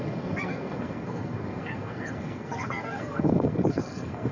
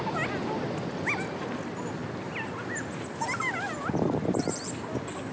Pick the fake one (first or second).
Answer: first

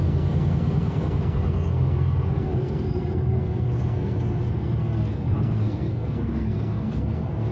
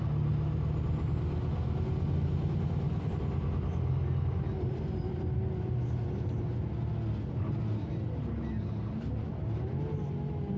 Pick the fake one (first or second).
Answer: first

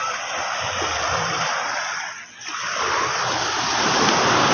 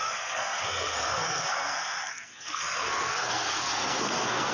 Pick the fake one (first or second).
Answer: second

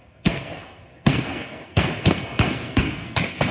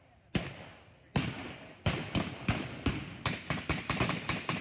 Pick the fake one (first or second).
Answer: first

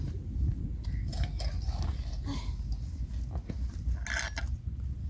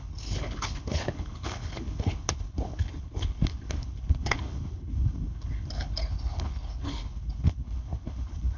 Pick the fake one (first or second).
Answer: second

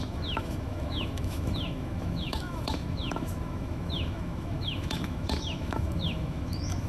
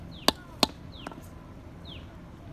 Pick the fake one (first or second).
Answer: first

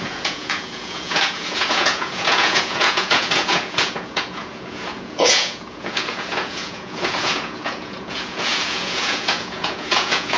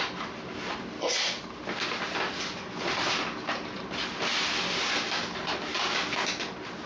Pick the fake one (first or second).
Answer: first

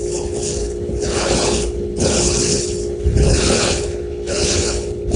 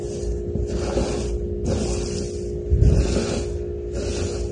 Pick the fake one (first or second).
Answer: first